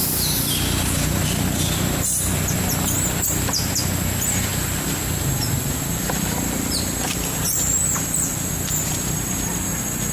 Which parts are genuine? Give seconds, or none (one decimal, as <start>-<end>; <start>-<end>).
0.0-10.1